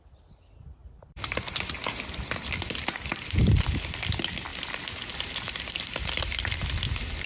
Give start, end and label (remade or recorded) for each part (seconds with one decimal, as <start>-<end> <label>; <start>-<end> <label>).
0.0-0.8 recorded; 0.8-1.5 remade; 1.5-7.3 recorded